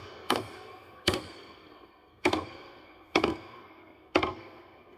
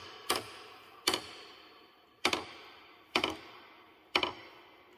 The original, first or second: second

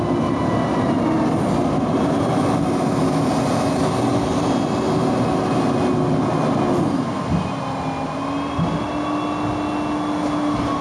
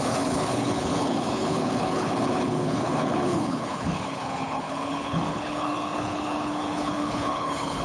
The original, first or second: first